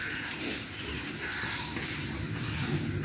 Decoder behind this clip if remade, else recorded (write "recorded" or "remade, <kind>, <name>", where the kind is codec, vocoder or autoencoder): recorded